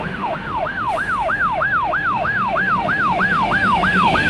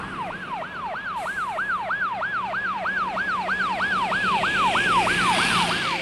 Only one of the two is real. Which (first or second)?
second